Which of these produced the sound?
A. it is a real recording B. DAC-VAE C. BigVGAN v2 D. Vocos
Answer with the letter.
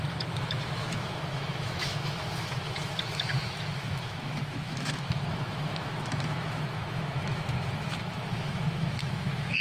B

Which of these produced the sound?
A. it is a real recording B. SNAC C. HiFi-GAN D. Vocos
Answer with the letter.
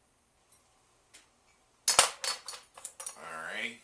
A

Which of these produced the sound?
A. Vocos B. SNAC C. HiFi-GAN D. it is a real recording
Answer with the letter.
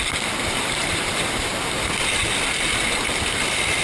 D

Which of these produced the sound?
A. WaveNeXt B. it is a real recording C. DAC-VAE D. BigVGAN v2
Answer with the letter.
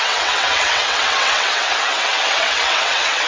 A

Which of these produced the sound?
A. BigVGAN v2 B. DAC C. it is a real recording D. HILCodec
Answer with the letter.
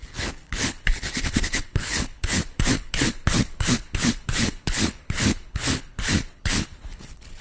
D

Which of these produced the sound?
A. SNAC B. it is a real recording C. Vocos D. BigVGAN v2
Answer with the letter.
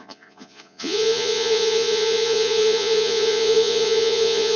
C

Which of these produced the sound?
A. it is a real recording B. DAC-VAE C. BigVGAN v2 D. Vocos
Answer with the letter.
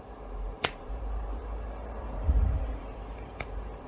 C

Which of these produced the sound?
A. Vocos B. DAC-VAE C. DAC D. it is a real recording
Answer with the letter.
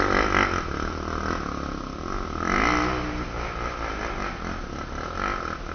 D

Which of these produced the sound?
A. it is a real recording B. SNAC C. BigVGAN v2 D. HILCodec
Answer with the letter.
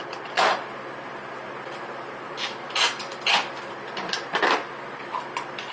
C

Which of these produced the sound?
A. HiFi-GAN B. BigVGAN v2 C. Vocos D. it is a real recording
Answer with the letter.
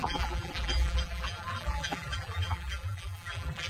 B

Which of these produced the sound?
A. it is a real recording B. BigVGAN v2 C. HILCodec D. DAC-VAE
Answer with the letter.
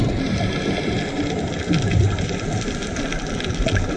A